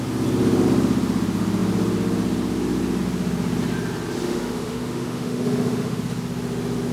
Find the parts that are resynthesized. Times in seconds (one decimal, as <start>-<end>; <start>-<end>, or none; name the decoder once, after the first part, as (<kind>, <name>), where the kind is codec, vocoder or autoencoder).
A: 4.2-6.0 (autoencoder, DAC-VAE)